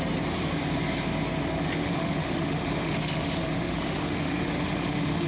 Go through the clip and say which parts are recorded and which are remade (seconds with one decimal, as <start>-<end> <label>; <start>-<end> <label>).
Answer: 0.0-1.8 recorded; 1.8-5.3 remade